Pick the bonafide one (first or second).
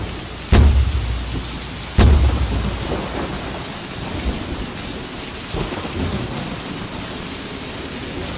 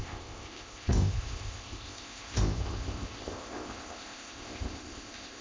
first